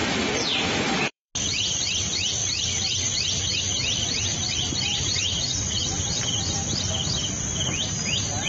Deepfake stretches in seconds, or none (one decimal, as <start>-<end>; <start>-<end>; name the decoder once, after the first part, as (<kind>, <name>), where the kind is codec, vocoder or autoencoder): 0.0-1.3 (vocoder, BigVGAN v2); 4.3-6.7

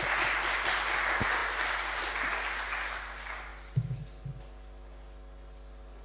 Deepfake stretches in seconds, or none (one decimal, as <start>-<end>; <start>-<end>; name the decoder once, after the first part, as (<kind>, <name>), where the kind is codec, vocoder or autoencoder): none

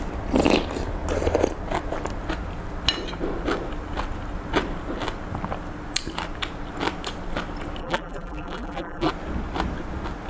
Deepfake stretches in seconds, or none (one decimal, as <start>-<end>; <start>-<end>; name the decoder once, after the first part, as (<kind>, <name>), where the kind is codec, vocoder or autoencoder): 7.8-9.1 (vocoder, BigVGAN v2)

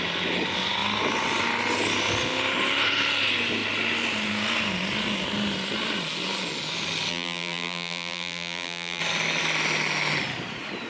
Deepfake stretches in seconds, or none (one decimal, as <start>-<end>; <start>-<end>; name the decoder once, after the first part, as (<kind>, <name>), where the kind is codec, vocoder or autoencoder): 7.1-9.0 (vocoder, BigVGAN v2)

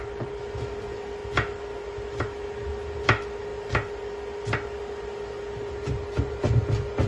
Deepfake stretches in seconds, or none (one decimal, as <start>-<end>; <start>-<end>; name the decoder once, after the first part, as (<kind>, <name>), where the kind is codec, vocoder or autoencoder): none